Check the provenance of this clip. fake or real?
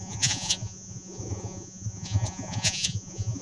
fake